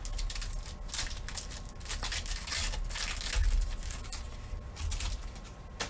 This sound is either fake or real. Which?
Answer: real